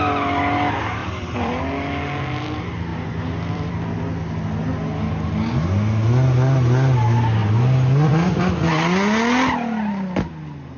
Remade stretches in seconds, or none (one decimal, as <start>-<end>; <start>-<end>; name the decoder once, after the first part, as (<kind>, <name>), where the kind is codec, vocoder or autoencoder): 1.0-1.6 (vocoder, BigVGAN v2); 2.9-3.7